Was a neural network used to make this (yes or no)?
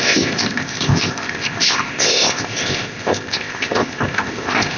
yes